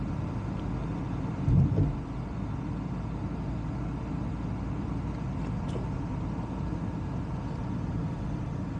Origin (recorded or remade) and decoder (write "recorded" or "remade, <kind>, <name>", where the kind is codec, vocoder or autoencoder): recorded